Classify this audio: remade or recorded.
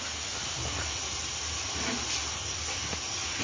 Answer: recorded